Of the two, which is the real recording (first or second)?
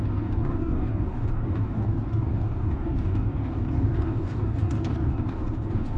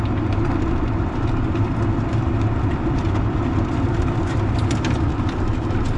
second